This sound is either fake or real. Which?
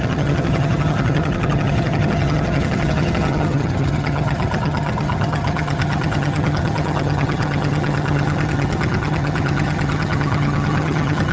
fake